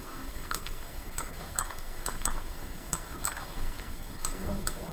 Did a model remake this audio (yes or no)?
yes